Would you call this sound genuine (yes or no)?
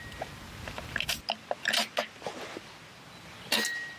yes